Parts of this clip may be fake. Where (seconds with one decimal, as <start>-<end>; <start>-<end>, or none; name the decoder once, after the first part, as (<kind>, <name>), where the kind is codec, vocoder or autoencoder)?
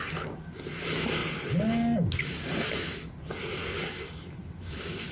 none